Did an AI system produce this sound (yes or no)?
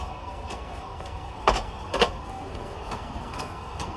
yes